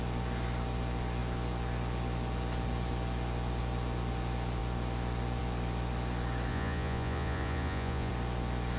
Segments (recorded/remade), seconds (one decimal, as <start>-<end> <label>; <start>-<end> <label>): 0.0-6.5 recorded; 6.5-8.1 remade; 8.1-8.8 recorded